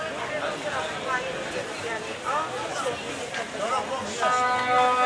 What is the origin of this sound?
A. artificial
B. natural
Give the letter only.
B